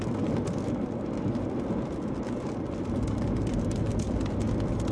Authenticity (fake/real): real